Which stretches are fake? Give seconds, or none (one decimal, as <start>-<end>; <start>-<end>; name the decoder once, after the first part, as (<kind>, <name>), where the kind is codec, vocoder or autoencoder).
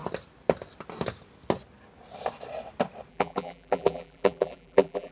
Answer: 3.1-5.1 (vocoder, BigVGAN v2)